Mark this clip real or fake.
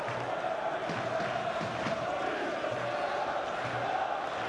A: real